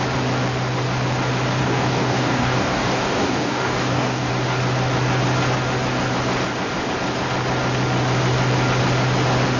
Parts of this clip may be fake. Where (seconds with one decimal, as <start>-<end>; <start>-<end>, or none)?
1.6-4.3